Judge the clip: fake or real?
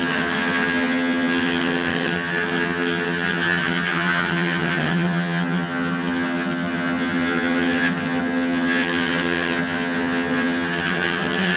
fake